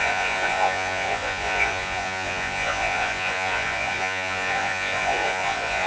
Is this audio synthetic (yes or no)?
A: yes